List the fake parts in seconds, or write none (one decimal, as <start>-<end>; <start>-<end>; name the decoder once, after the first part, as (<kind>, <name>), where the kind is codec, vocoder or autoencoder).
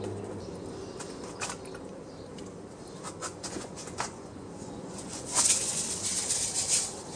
3.2-5.8 (vocoder, Vocos)